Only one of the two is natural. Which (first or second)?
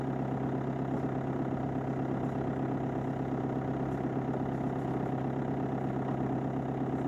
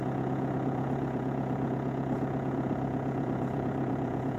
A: first